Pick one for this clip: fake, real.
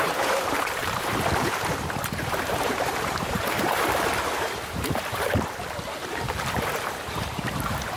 fake